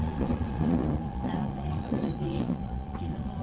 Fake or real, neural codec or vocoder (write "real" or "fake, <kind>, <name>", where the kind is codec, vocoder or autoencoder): fake, vocoder, Vocos